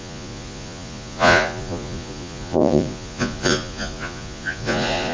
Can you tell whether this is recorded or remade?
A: remade